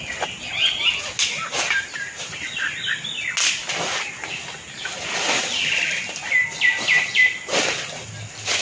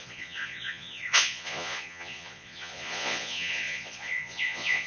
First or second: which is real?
first